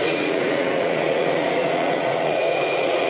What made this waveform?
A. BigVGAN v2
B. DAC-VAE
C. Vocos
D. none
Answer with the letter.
C